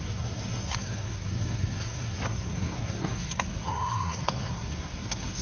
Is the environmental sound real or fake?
fake